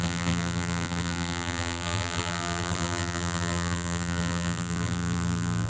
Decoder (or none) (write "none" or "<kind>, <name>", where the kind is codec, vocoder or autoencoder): vocoder, BigVGAN v2